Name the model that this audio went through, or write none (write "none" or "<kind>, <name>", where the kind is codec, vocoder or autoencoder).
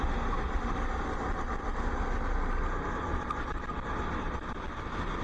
none